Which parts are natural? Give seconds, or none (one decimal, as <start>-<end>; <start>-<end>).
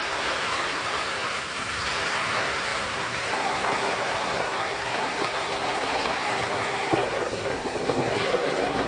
none